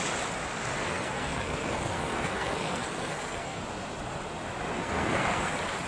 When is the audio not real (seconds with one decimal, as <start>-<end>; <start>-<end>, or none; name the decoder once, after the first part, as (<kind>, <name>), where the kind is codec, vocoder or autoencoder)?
0.8-3.6 (codec, SNAC); 4.8-5.5